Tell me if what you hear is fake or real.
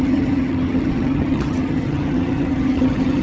fake